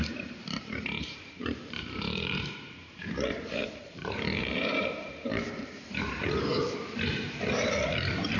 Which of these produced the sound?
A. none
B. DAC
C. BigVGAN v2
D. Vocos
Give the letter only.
C